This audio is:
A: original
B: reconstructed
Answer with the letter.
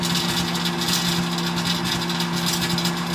A